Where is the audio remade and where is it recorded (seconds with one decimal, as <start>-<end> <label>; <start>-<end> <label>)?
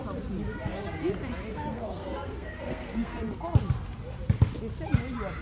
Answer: 0.0-1.5 recorded; 1.5-3.2 remade; 3.2-5.4 recorded